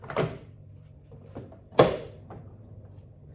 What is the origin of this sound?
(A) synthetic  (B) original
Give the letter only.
A